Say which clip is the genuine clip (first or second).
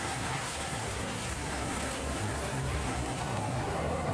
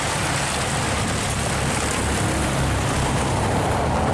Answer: second